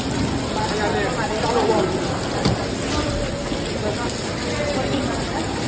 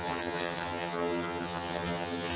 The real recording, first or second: first